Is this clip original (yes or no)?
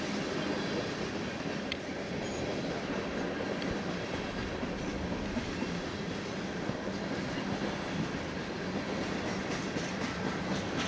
yes